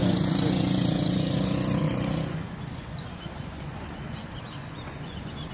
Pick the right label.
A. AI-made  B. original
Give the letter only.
A